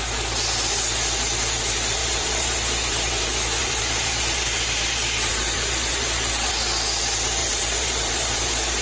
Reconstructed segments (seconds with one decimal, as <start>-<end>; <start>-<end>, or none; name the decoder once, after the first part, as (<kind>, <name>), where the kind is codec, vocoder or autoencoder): 2.0-3.1 (vocoder, BigVGAN v2); 3.6-6.5; 7.4-8.8